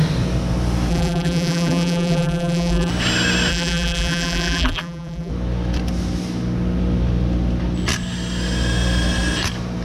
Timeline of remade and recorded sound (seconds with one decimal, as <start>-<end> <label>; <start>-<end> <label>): 0.0-0.9 recorded; 0.9-2.9 remade; 2.9-3.5 recorded; 3.5-5.3 remade; 5.3-9.8 recorded